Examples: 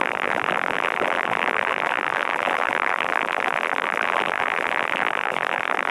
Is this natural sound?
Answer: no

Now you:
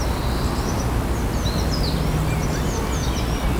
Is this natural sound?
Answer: yes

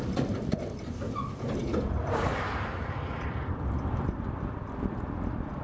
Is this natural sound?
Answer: no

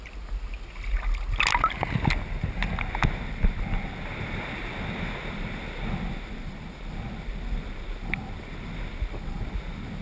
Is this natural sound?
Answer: yes